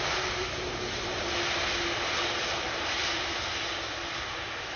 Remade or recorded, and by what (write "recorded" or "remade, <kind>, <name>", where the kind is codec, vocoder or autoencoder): recorded